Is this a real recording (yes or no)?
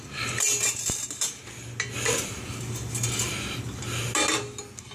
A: yes